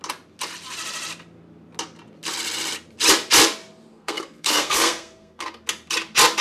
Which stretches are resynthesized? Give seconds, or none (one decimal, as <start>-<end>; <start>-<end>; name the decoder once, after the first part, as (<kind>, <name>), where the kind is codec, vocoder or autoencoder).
3.9-5.6 (codec, SNAC)